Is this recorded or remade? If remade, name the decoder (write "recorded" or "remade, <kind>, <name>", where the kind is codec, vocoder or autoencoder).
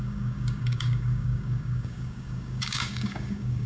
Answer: remade, codec, DAC